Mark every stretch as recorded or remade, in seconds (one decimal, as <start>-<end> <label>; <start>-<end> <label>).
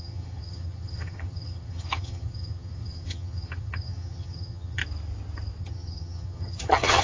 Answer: 0.0-4.8 remade; 4.8-5.6 recorded; 5.6-7.0 remade